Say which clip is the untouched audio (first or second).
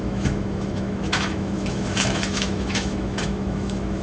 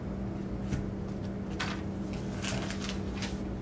second